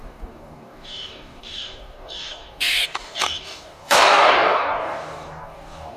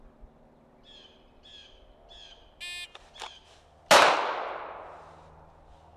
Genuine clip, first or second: second